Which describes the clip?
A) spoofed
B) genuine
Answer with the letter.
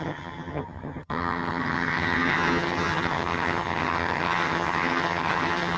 A